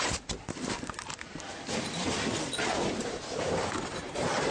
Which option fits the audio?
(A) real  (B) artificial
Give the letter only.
A